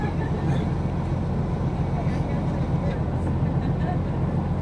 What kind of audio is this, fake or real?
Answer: real